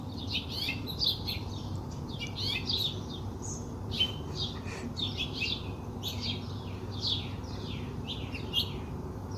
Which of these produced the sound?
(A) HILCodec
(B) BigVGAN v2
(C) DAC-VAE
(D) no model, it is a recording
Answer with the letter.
D